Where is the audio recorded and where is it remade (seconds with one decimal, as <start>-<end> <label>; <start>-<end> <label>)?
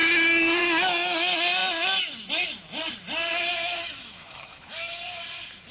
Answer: 0.0-3.5 recorded; 3.5-5.0 remade; 5.0-5.7 recorded